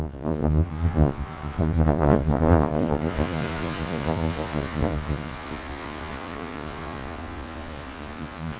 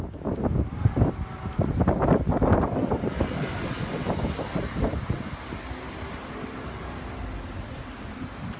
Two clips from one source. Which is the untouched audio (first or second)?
second